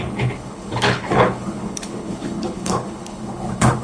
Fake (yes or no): yes